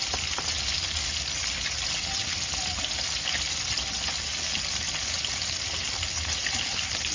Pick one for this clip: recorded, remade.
recorded